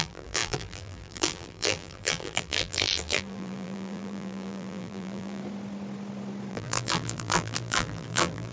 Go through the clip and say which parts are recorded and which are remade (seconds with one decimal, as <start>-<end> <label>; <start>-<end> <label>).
0.0-5.4 remade; 5.4-6.5 recorded; 6.5-8.5 remade